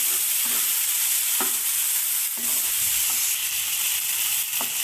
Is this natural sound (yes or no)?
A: yes